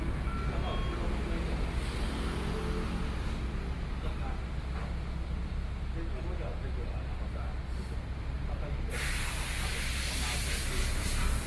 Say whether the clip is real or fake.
real